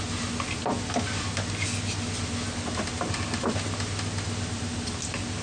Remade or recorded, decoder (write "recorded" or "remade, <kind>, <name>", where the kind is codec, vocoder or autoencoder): recorded